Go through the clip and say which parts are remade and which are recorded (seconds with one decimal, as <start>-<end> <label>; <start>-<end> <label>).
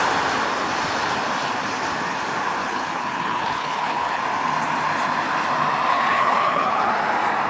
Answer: 0.0-2.6 recorded; 2.6-4.2 remade; 4.2-5.9 recorded; 5.9-6.9 remade; 6.9-7.5 recorded